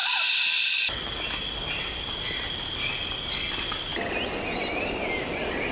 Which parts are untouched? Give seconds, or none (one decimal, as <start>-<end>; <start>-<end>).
0.0-5.7